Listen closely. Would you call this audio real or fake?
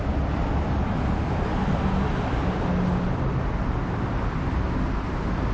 real